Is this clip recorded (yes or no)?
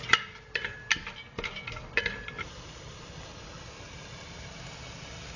yes